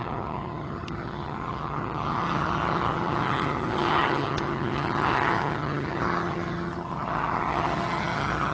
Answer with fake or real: fake